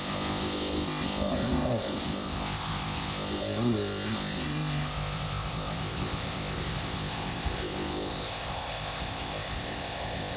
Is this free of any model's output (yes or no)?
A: no